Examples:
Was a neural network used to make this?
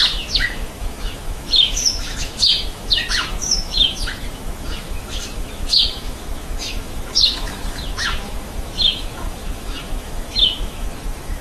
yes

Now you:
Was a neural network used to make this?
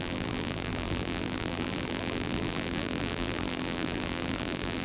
yes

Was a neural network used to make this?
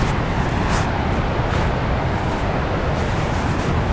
no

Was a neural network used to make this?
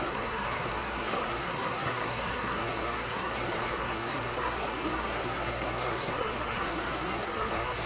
yes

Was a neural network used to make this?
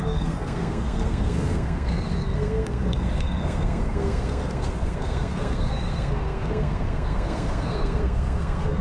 yes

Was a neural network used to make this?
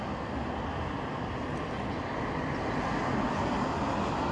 no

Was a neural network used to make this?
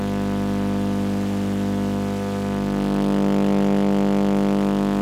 no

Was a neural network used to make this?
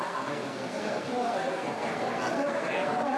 yes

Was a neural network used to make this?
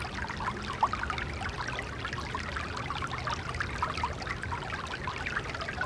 no